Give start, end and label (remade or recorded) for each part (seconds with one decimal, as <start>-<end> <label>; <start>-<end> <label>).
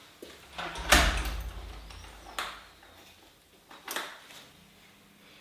0.0-5.4 recorded